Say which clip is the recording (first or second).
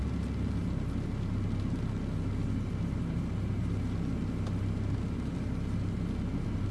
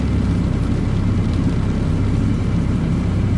first